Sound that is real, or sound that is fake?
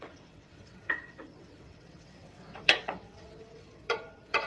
fake